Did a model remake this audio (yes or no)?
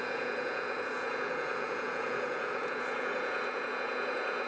yes